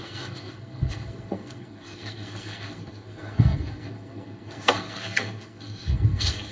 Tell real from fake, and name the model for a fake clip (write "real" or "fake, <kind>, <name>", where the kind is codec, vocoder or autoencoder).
fake, codec, SNAC